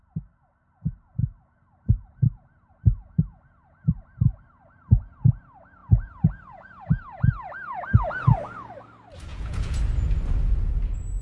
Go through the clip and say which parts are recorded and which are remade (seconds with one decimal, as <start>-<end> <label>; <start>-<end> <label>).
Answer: 0.0-5.8 recorded; 5.8-6.8 remade; 6.8-9.3 recorded; 9.3-9.8 remade; 9.8-11.2 recorded